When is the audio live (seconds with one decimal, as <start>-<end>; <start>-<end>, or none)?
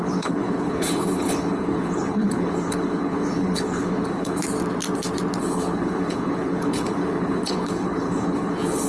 4.4-5.4